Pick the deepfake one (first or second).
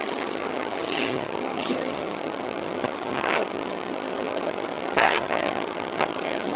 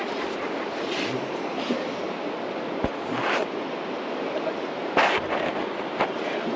first